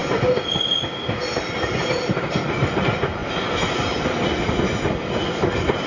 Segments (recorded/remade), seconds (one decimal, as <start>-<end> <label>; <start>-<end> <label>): 0.0-5.9 recorded